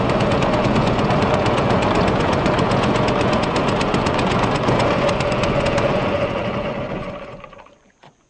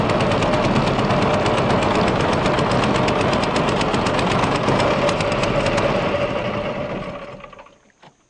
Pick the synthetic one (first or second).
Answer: first